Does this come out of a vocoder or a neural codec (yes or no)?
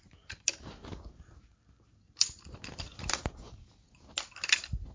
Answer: no